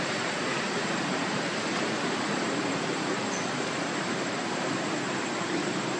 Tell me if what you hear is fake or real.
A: fake